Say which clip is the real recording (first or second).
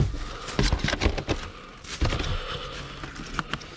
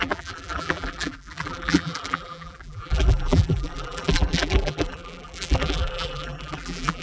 first